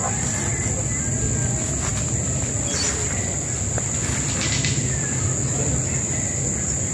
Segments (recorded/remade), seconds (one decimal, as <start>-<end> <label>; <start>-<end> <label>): 0.0-6.9 recorded